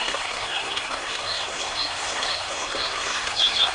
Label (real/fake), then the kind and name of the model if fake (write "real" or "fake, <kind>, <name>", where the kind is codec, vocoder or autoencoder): fake, codec, SNAC